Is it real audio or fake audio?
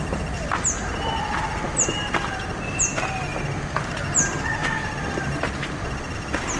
real